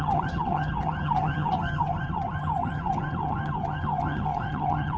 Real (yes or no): no